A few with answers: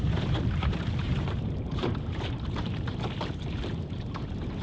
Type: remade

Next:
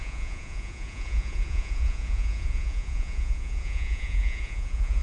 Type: remade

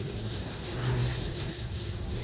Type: remade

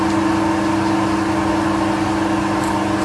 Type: recorded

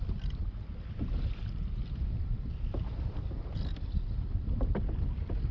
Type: recorded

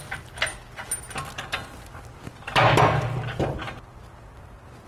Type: recorded